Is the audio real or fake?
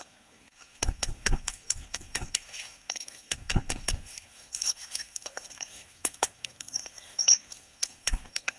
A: fake